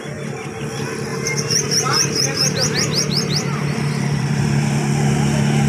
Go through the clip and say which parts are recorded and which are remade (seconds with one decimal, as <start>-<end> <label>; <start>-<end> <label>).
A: 0.0-1.1 recorded; 1.1-4.4 remade; 4.4-5.7 recorded